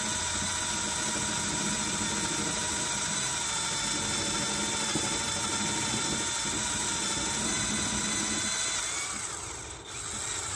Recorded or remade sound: recorded